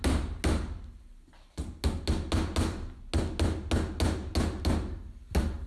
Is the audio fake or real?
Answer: real